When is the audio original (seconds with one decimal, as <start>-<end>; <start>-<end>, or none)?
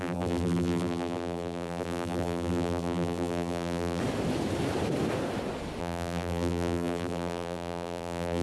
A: 4.0-5.8